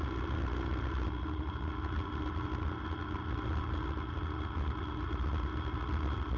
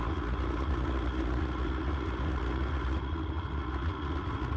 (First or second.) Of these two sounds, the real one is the first